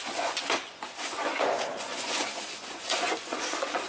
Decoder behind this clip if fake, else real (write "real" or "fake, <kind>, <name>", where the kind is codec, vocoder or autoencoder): fake, vocoder, Vocos